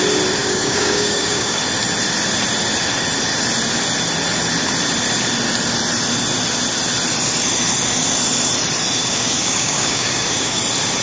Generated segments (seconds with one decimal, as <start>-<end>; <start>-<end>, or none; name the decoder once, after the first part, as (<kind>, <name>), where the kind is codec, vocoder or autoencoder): 0.4-1.6 (codec, DAC); 9.0-10.6